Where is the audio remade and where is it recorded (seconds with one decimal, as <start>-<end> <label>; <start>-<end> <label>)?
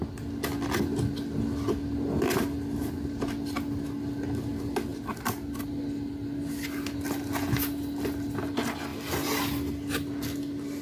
0.0-10.8 recorded